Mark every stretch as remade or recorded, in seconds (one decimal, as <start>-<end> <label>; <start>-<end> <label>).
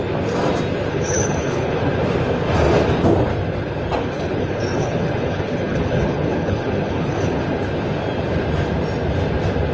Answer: 0.0-0.9 recorded; 0.9-1.8 remade; 1.8-4.0 recorded; 4.0-7.4 remade; 7.4-9.7 recorded